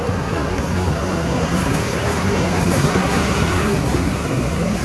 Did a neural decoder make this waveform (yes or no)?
yes